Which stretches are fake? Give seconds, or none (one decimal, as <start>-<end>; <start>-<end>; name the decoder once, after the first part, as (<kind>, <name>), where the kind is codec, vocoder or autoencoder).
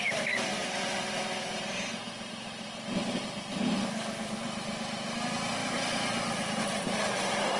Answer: 0.0-7.6 (vocoder, BigVGAN v2)